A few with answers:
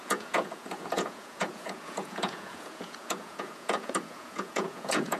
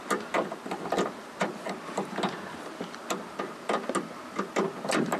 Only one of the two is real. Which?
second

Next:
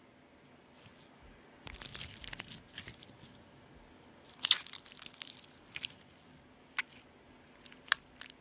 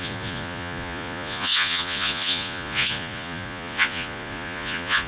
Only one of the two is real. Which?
first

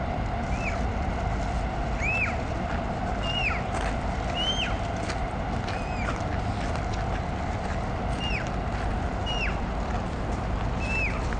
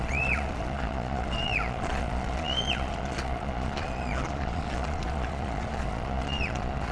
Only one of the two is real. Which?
first